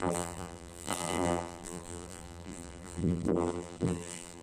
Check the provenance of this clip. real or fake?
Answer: fake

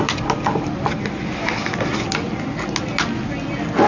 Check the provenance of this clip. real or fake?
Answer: real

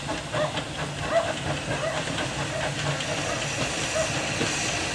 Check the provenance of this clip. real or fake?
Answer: real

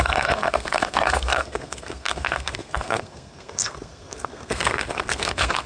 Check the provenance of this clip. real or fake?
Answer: fake